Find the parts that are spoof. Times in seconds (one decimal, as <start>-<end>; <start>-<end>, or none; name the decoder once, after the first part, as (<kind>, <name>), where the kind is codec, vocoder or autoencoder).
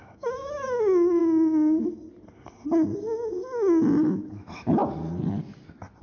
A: 0.0-1.2 (autoencoder, DAC-VAE); 4.0-4.8